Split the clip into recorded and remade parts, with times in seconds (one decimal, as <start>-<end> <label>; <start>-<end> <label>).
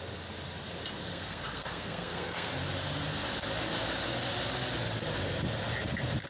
0.0-1.1 recorded; 1.1-2.5 remade; 2.5-6.3 recorded